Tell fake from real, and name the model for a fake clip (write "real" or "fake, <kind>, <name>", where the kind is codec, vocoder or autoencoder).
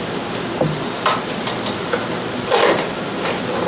real